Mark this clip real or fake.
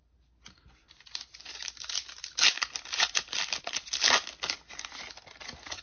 real